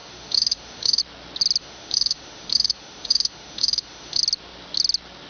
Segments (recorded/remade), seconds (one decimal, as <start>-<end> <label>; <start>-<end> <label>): 0.0-1.0 remade; 1.0-1.6 recorded; 1.6-4.2 remade; 4.2-5.3 recorded